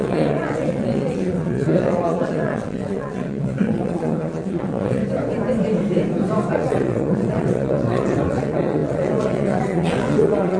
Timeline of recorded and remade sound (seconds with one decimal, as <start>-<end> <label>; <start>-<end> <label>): 0.0-5.0 remade; 5.0-6.5 recorded; 6.5-10.6 remade